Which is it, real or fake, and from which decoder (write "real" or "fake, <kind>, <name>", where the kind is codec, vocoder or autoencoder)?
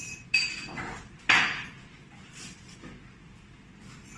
real